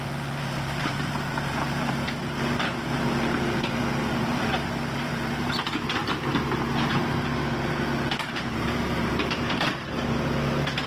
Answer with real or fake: fake